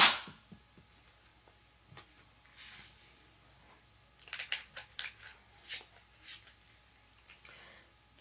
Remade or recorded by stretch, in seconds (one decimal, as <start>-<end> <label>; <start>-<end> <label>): 0.0-8.2 recorded